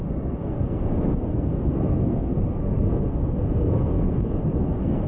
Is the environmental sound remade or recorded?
remade